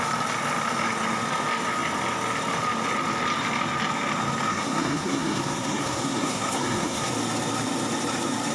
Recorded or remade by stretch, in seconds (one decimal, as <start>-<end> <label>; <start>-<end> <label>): 0.0-4.5 recorded; 4.5-7.1 remade; 7.1-8.5 recorded